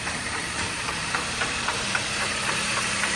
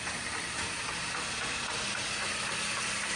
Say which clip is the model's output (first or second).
first